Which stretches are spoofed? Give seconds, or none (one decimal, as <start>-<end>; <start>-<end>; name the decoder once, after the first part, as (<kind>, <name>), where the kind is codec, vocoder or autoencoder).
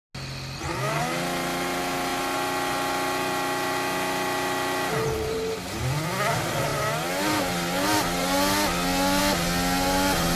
none